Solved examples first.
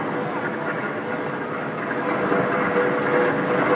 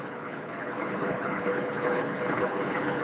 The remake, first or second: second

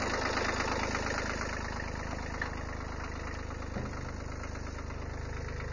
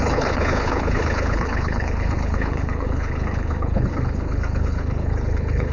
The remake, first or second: second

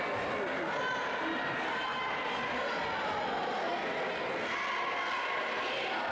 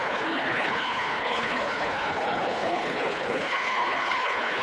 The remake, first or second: second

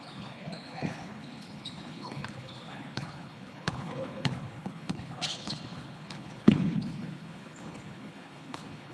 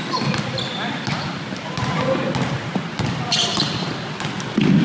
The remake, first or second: first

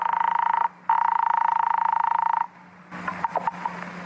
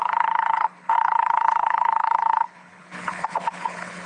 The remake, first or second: second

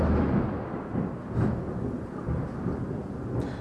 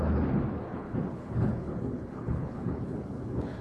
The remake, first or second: second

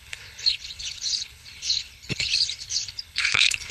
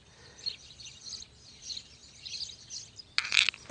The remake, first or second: first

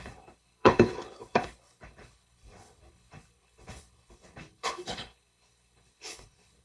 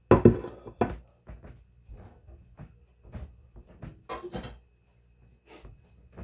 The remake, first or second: first